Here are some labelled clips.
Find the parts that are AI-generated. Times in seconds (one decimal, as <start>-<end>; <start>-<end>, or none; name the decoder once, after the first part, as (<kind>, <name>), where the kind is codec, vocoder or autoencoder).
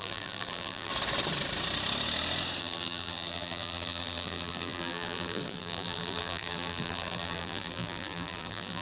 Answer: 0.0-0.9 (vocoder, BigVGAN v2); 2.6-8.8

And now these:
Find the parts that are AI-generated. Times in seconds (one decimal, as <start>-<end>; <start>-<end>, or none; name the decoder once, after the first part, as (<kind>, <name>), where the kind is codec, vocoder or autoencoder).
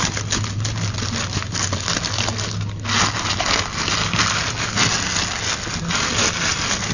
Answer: none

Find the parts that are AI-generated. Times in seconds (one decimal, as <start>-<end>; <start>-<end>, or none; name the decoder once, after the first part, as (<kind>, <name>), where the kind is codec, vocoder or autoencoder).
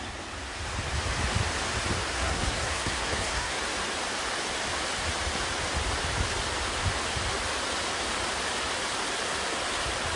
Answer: 2.1-3.6 (codec, SNAC)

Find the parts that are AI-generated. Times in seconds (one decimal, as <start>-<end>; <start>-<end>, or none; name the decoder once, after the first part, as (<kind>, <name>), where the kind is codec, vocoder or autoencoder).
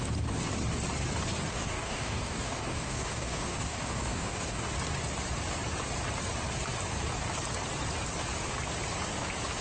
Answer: 1.5-4.7 (codec, DAC)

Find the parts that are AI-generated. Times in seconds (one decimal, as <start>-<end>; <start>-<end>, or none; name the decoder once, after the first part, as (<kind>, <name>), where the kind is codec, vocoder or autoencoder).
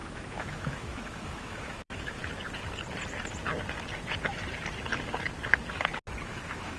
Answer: 0.0-2.2 (autoencoder, DAC-VAE); 6.3-6.8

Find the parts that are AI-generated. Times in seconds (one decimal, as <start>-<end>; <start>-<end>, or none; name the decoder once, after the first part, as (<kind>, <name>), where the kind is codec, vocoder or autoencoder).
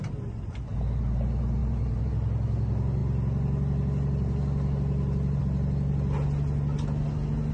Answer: 1.6-2.1 (vocoder, BigVGAN v2)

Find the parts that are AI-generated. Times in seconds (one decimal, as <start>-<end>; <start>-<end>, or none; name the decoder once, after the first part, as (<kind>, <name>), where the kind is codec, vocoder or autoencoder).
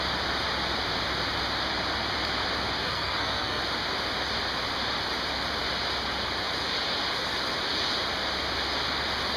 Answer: 2.8-3.6 (codec, SNAC)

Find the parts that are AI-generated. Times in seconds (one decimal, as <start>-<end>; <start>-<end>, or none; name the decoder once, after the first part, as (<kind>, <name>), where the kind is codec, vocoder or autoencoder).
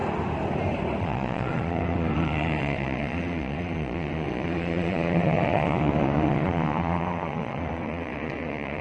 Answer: 1.0-8.8 (vocoder, Vocos)